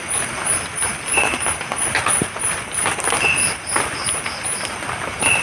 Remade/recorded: recorded